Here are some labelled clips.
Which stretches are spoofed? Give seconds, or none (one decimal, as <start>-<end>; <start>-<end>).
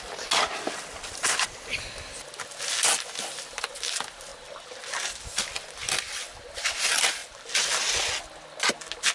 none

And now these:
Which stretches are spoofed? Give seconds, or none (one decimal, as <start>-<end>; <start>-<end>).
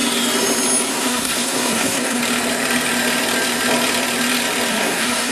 0.9-2.2; 4.7-5.3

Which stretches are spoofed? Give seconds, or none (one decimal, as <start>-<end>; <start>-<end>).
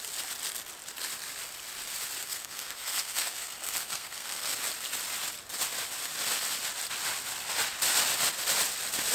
2.2-4.5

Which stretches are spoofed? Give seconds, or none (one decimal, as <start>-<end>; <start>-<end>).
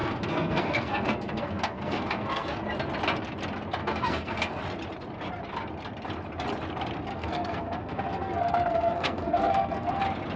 0.0-2.6; 3.8-4.6; 7.1-10.0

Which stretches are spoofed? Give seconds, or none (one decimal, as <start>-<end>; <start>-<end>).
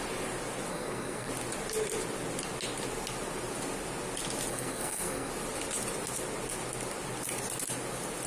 0.7-1.3; 4.5-5.3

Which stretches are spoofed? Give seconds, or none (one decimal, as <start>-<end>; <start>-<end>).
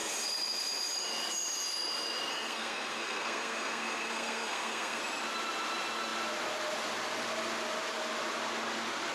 2.3-5.0